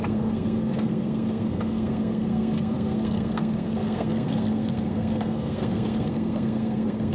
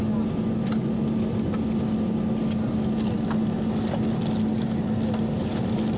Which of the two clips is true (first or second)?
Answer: second